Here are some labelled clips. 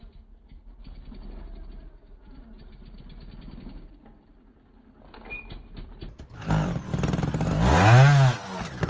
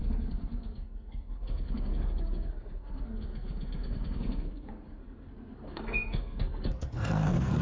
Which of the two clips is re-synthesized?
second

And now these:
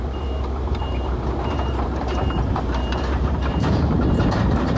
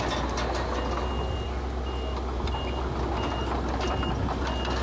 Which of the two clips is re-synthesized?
first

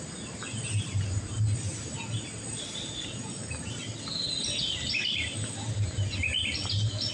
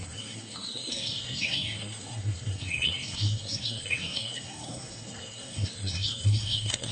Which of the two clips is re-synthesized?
second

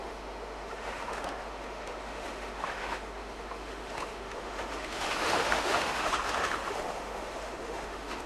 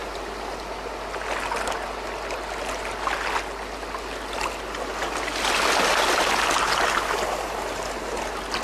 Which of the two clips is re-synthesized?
first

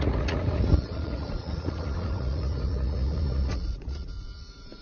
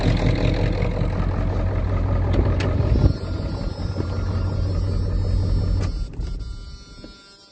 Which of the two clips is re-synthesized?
first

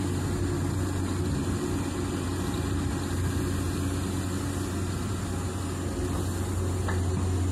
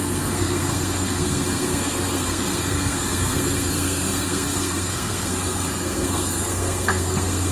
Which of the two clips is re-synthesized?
second